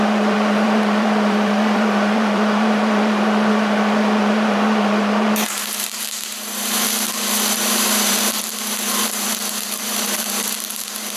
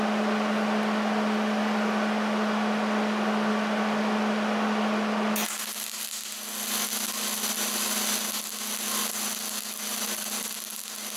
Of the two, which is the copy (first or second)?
first